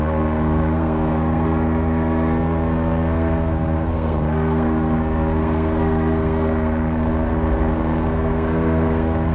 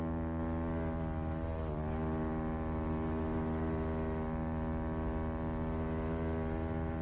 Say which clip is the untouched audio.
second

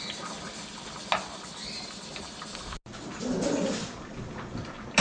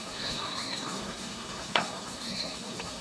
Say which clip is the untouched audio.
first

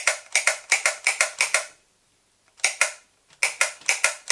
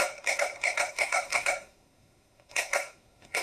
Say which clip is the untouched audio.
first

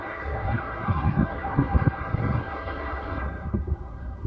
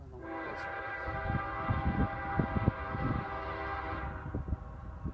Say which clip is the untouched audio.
second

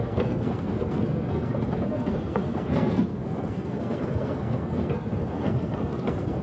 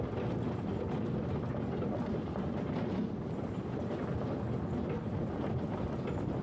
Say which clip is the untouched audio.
second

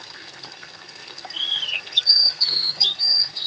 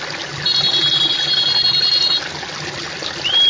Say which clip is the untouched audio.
second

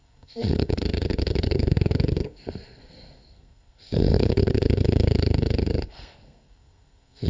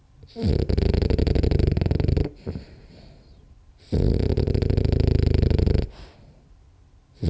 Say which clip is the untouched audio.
second